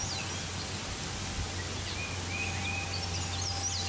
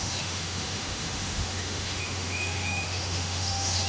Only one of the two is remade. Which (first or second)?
second